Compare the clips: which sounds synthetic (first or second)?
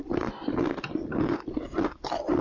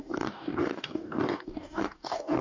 second